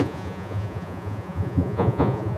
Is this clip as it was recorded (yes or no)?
no